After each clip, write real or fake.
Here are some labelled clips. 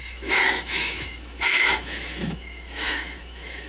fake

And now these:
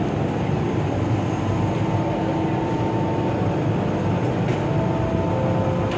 real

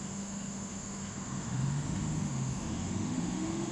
fake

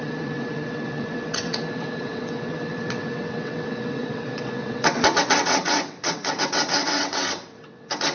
fake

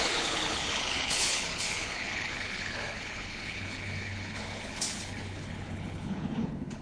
fake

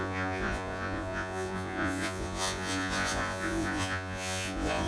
fake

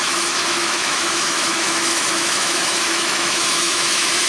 fake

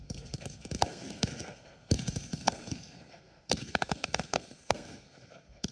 fake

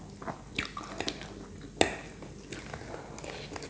real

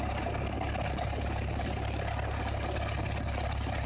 real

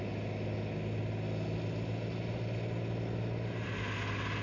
real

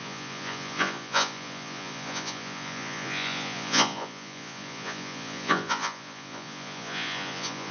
fake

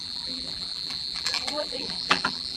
fake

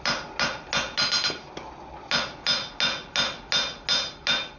real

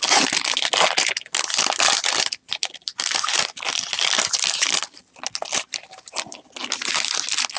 real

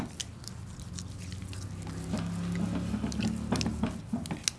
real